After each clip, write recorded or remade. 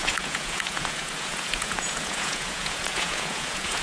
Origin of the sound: remade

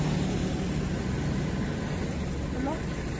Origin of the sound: recorded